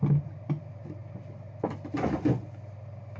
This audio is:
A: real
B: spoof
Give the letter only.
A